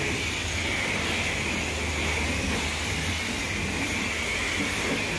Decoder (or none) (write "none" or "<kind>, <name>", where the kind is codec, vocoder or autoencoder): none